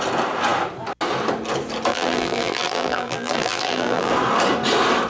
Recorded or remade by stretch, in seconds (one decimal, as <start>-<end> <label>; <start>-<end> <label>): 0.0-1.9 recorded; 1.9-4.1 remade; 4.1-5.1 recorded